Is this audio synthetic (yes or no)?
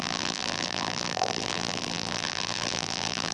yes